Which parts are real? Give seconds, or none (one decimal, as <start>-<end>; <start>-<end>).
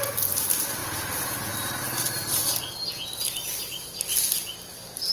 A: 0.0-0.8; 1.5-5.1